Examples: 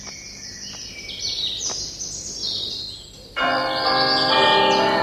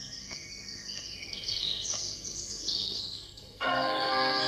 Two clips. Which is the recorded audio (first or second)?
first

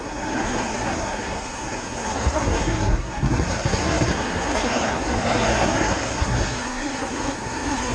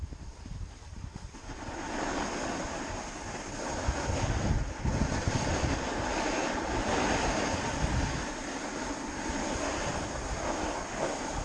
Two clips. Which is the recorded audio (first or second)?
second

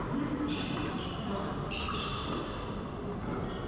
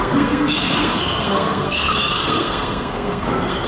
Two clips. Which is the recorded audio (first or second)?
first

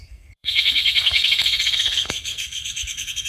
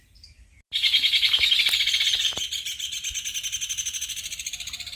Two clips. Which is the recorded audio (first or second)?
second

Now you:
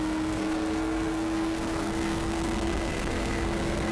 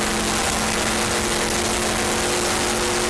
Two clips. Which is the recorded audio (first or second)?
second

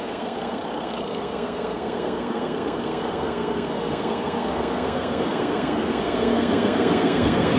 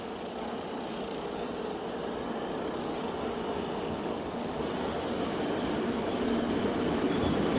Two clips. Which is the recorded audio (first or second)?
second